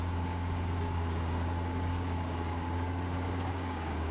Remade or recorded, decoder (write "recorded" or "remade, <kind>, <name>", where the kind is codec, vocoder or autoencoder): remade, codec, DAC